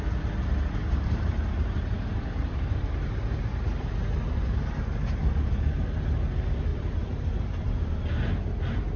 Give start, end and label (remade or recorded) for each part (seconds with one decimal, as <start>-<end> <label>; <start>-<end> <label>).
0.0-0.8 recorded; 0.8-3.9 remade; 3.9-6.7 recorded; 6.7-7.9 remade; 7.9-9.0 recorded

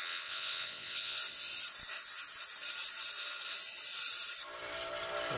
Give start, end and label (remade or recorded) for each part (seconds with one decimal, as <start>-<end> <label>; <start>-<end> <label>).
0.0-1.2 remade; 1.2-5.4 recorded

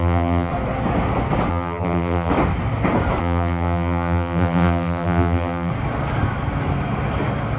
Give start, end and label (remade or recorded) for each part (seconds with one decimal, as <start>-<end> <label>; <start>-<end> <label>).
0.0-0.5 remade; 0.5-1.5 recorded; 1.5-2.3 remade; 2.3-3.2 recorded; 3.2-5.7 remade; 5.7-7.6 recorded

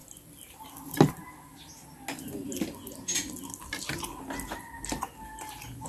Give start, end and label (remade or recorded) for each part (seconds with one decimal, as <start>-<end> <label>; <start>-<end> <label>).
0.0-5.9 recorded